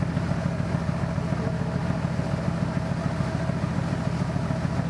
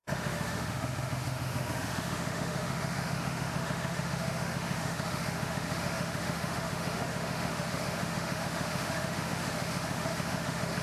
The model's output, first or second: second